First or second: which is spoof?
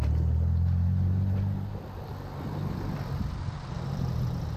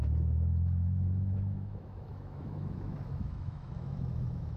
second